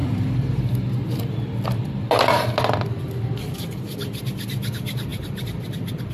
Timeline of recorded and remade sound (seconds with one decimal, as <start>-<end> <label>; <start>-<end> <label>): 0.0-0.6 remade; 0.6-6.1 recorded

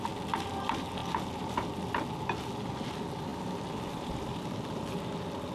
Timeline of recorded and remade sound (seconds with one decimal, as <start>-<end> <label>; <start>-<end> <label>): 0.0-5.5 recorded

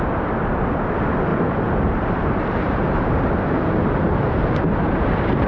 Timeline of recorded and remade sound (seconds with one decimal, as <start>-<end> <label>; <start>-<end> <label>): 0.0-1.3 recorded; 1.3-4.6 remade; 4.6-5.5 recorded

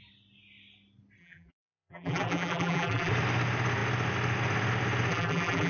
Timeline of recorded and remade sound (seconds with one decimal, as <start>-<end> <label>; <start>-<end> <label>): 0.0-1.2 recorded; 1.2-3.1 remade; 3.1-5.1 recorded; 5.1-5.7 remade

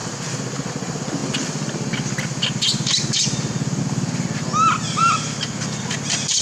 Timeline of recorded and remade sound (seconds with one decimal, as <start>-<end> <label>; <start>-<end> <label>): 0.0-5.0 recorded; 5.0-5.5 remade; 5.5-6.4 recorded

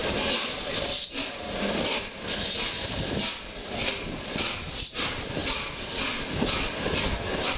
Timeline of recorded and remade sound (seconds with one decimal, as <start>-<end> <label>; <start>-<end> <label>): 0.0-7.6 recorded

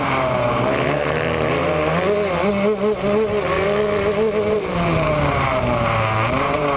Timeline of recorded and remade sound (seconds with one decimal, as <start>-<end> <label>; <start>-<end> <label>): 0.0-1.6 remade; 1.6-4.5 recorded; 4.5-6.8 remade

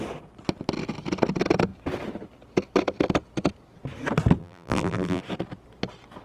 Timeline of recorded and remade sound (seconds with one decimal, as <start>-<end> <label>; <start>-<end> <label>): 0.0-4.4 recorded; 4.4-5.2 remade; 5.2-6.2 recorded